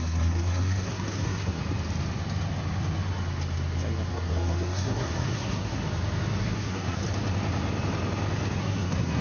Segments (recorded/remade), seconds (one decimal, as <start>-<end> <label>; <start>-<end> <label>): 0.0-1.6 remade; 1.6-4.1 recorded; 4.1-5.8 remade; 5.8-6.4 recorded; 6.4-7.0 remade; 7.0-8.6 recorded; 8.6-9.2 remade